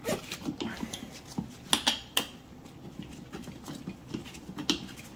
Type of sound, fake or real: real